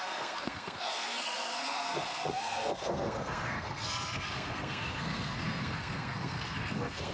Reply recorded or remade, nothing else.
remade